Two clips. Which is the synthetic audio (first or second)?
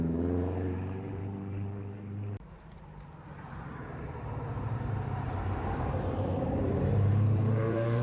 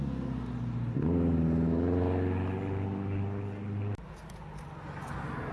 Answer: first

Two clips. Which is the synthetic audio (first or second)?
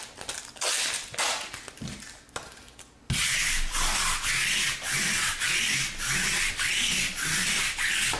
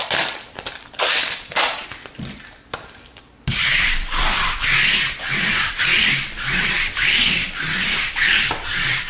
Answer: second